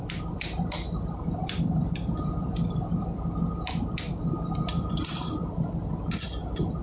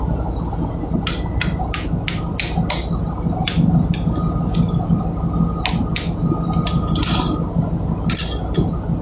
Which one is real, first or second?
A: second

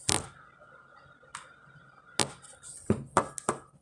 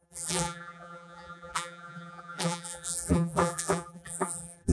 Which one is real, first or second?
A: first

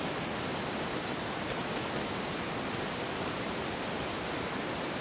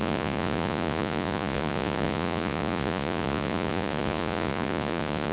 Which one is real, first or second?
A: first